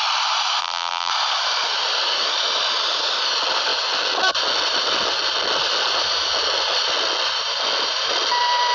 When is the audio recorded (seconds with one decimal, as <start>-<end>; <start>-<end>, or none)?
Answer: 0.0-0.6; 1.1-8.7